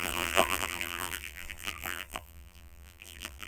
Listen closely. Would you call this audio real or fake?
fake